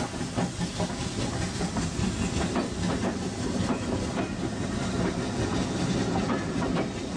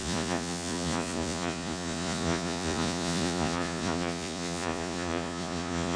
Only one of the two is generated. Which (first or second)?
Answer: second